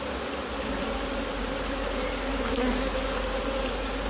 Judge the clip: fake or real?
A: real